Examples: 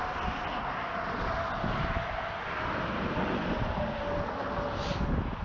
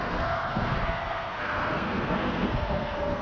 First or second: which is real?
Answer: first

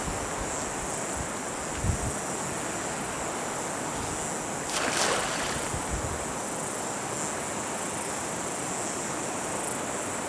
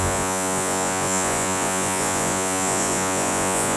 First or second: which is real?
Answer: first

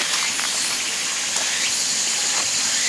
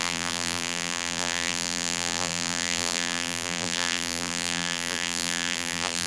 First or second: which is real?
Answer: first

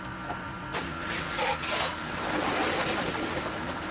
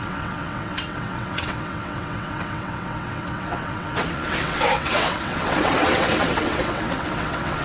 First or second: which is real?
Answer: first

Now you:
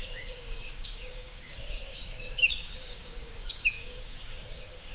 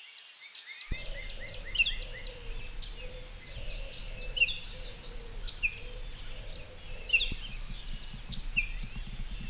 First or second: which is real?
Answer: second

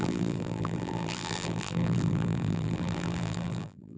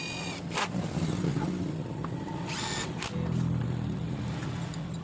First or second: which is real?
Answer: second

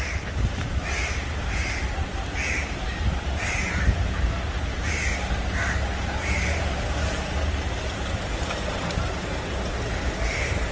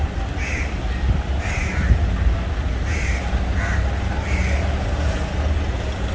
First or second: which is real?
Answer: second